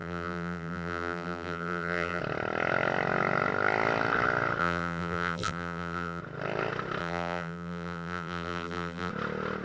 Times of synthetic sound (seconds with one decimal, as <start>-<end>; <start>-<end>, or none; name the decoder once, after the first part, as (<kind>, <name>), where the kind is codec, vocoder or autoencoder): 0.0-2.2 (vocoder, BigVGAN v2); 4.6-6.2; 7.0-9.1